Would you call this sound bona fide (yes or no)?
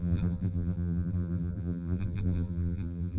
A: no